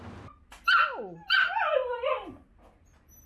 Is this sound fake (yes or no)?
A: no